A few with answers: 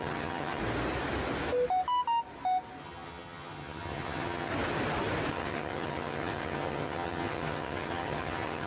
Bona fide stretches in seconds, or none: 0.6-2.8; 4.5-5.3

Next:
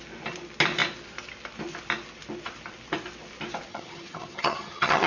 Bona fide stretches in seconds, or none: 0.0-3.7

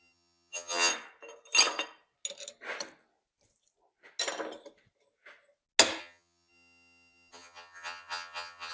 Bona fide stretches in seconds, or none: 0.9-6.0

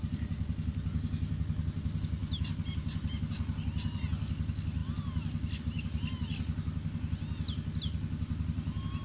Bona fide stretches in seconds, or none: 0.0-9.0

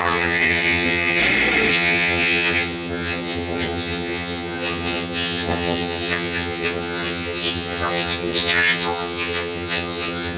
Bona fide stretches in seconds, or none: 1.2-1.7